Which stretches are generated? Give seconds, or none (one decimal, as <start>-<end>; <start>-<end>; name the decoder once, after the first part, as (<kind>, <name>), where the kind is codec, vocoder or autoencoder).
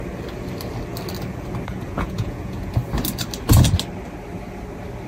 1.7-2.8 (vocoder, Vocos)